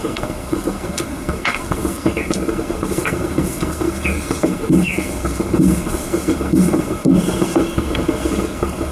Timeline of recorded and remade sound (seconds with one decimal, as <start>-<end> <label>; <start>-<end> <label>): 0.0-8.9 remade